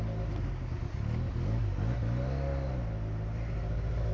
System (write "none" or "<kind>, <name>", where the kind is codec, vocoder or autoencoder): none